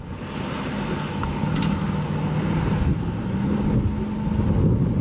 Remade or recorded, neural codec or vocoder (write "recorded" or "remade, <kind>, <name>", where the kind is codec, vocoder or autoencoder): recorded